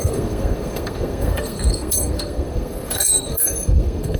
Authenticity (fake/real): fake